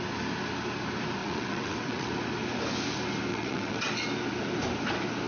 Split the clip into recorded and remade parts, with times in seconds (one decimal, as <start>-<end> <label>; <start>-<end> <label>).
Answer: 0.0-1.2 recorded; 1.2-2.1 remade; 2.1-3.3 recorded; 3.3-3.9 remade; 3.9-5.3 recorded